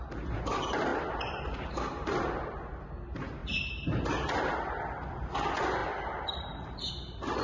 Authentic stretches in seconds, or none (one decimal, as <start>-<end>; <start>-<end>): 0.0-7.4